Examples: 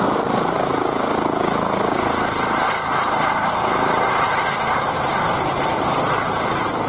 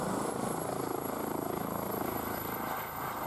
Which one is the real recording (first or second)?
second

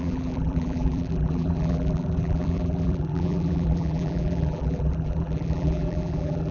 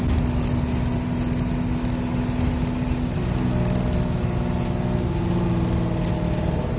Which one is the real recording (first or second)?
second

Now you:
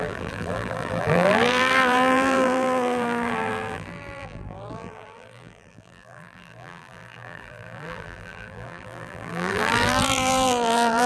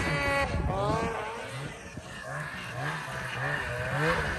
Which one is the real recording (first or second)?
second